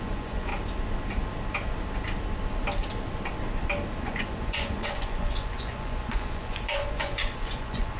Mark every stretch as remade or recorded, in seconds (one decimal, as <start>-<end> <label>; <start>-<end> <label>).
0.0-0.5 remade; 0.5-4.0 recorded; 4.0-8.0 remade